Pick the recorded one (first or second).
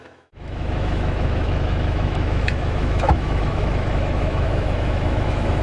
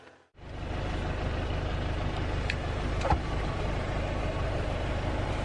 second